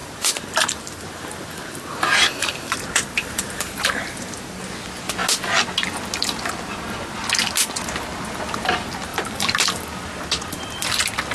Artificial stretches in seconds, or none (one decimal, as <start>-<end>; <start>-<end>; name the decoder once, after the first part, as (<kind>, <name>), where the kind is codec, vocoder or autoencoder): 0.0-4.6 (vocoder, BigVGAN v2); 9.1-9.8